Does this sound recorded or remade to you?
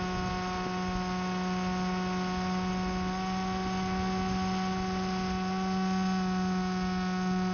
recorded